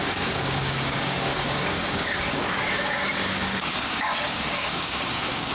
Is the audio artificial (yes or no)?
yes